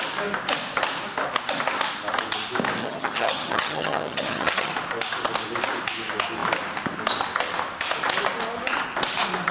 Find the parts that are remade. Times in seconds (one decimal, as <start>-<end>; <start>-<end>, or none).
2.8-4.7